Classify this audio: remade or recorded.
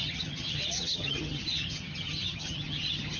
remade